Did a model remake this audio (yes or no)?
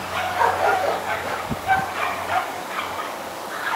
yes